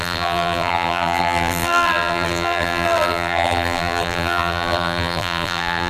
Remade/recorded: remade